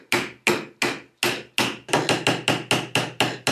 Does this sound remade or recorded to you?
recorded